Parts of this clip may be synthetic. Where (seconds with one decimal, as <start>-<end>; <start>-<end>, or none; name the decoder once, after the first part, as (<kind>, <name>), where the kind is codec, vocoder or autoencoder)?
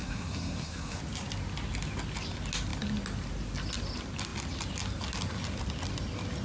0.0-1.0 (codec, SNAC)